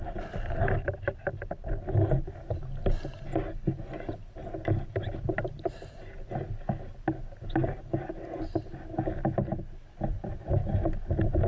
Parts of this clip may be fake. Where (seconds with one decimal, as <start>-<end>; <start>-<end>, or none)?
none